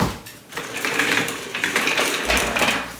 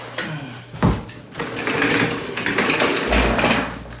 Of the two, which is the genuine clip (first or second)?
second